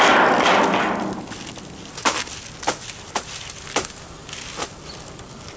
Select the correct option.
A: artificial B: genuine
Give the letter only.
B